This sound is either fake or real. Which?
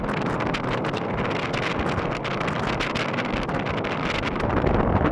real